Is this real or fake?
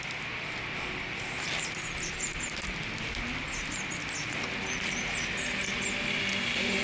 real